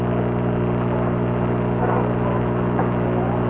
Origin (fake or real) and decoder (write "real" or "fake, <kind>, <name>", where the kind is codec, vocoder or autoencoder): real